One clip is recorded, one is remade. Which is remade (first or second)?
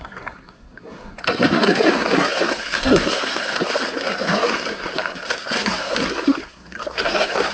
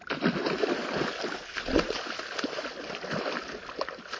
first